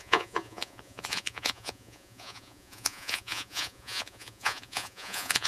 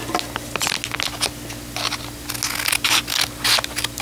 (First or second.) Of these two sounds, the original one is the second